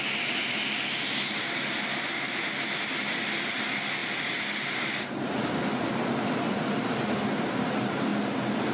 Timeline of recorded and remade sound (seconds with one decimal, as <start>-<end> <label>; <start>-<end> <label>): 0.0-8.7 recorded